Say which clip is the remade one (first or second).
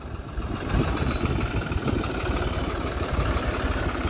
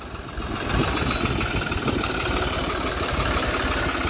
first